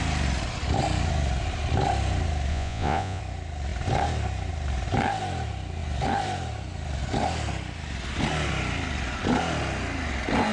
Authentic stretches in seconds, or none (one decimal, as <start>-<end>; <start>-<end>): 0.0-2.5; 3.2-10.5